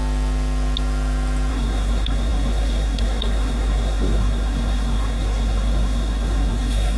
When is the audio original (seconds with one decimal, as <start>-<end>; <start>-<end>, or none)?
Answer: 0.0-1.5